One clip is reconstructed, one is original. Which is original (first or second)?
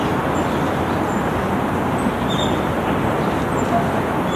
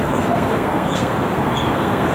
first